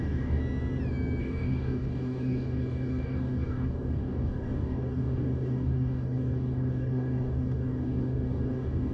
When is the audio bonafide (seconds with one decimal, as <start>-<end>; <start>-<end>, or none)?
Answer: 0.4-1.2